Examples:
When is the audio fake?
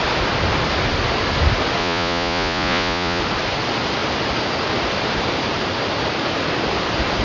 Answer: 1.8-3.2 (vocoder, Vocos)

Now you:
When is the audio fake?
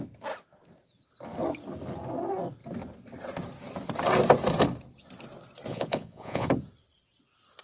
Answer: 5.7-6.5 (vocoder, Vocos)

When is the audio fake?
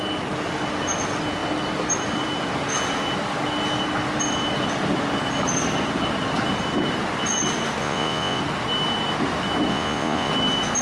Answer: 7.8-8.4 (vocoder, Vocos); 9.7-10.3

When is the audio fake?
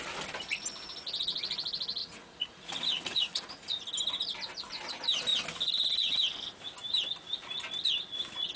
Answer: 2.0-3.8 (vocoder, Vocos)